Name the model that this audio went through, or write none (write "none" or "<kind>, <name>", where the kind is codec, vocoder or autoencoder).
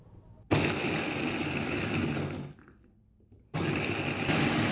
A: none